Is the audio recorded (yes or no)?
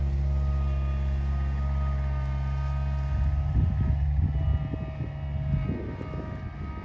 yes